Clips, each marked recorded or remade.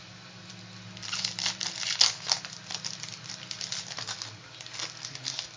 recorded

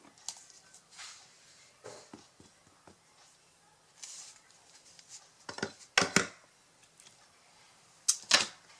recorded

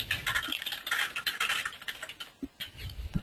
recorded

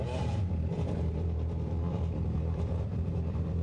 remade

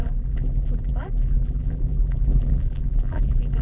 remade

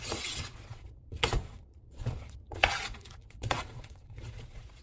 remade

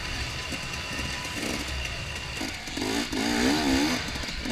recorded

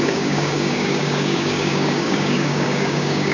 remade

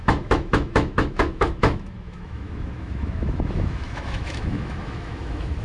remade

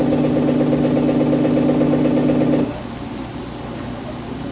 recorded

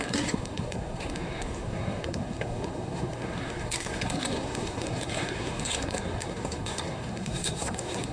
remade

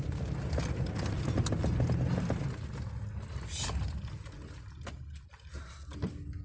recorded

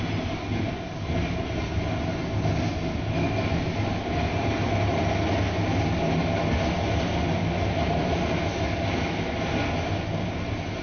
recorded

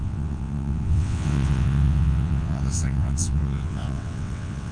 remade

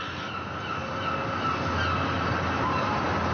recorded